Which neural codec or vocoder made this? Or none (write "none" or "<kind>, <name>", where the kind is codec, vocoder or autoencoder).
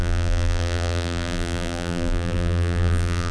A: vocoder, BigVGAN v2